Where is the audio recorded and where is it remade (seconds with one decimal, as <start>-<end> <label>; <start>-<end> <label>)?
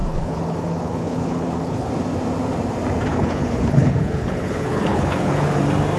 0.0-1.9 remade; 1.9-3.1 recorded; 3.1-5.6 remade; 5.6-6.0 recorded